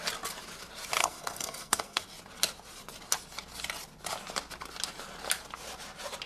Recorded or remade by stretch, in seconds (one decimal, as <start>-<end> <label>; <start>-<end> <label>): 0.0-1.0 recorded; 1.0-2.0 remade; 2.0-6.3 recorded

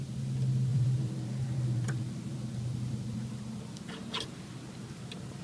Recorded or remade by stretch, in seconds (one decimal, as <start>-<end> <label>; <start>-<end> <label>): 0.0-0.7 recorded; 0.7-3.9 remade; 3.9-5.4 recorded

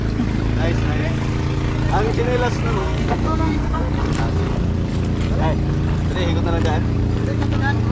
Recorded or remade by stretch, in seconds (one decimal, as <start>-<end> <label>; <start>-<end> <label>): 0.0-2.8 recorded; 2.8-3.9 remade; 3.9-7.9 recorded

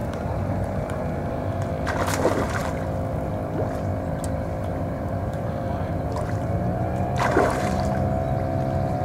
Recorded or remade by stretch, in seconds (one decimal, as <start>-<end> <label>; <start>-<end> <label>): 0.0-1.7 remade; 1.7-4.7 recorded; 4.7-8.1 remade; 8.1-9.0 recorded

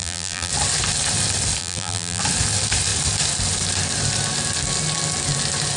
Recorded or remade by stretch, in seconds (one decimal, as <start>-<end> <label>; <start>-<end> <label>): 0.0-0.5 remade; 0.5-1.6 recorded; 1.6-2.2 remade; 2.2-5.8 recorded

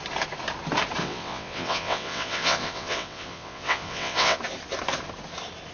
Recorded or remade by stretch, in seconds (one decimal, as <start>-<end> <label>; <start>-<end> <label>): 0.0-1.0 recorded; 1.0-4.4 remade; 4.4-5.7 recorded

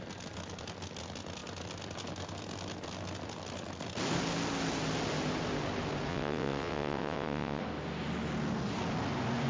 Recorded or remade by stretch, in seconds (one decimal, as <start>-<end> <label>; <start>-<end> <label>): 0.0-6.1 recorded; 6.1-7.6 remade; 7.6-9.5 recorded